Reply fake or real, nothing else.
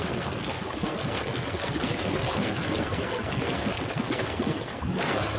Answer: fake